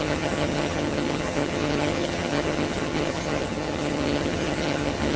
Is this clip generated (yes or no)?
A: yes